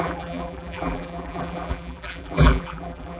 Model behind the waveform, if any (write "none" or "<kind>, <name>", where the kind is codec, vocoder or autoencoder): vocoder, BigVGAN v2